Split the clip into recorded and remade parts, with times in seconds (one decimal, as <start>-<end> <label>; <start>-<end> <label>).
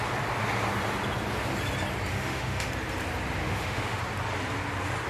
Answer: 0.0-2.1 recorded; 2.1-2.7 remade; 2.7-3.4 recorded; 3.4-4.0 remade; 4.0-5.1 recorded